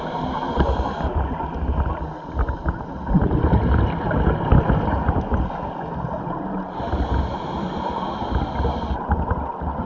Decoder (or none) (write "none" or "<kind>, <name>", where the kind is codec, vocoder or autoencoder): none